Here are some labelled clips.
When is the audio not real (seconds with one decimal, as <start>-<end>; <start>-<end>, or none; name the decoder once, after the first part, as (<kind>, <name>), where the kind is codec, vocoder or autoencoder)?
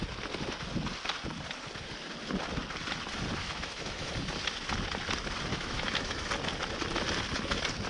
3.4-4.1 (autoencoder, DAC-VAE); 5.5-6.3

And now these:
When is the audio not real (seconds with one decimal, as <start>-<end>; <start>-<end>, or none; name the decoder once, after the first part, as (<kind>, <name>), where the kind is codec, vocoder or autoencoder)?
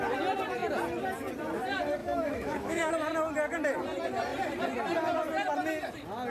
2.0-2.9 (autoencoder, DAC-VAE)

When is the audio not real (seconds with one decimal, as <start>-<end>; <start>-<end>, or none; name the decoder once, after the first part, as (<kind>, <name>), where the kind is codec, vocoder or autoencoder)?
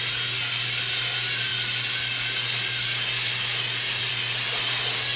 none